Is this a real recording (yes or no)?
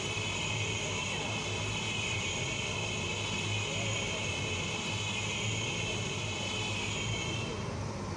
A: yes